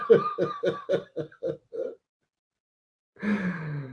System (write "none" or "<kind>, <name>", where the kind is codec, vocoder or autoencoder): none